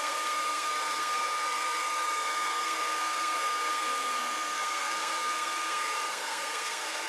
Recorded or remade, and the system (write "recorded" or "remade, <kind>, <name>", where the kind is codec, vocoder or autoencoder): remade, codec, SNAC